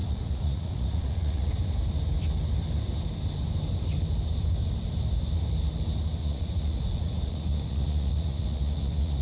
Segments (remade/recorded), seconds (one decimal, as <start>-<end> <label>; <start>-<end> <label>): 0.0-1.5 remade; 1.5-6.2 recorded; 6.2-9.2 remade